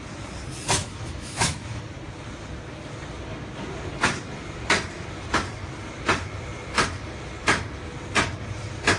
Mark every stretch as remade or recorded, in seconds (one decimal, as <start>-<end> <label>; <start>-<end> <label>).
0.0-0.8 recorded; 0.8-1.8 remade; 1.8-9.0 recorded